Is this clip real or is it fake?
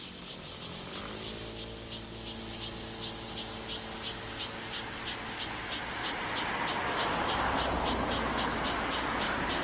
real